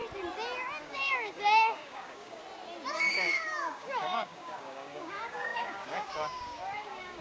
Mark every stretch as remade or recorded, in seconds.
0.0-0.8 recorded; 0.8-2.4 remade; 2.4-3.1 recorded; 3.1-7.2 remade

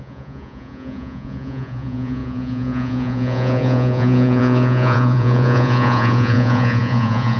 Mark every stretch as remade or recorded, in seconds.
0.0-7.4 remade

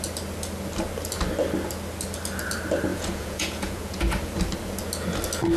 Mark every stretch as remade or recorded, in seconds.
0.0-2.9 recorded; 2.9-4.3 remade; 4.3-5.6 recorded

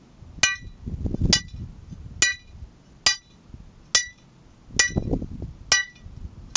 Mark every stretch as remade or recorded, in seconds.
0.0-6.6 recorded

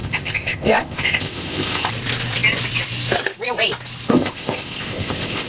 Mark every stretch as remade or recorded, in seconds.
0.0-1.9 remade; 1.9-4.1 recorded; 4.1-5.5 remade